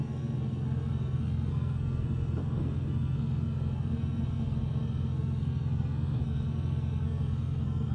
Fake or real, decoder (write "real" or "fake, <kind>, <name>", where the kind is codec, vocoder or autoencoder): fake, codec, SNAC